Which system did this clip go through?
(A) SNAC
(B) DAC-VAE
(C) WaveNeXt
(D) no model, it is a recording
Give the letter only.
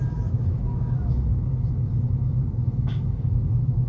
B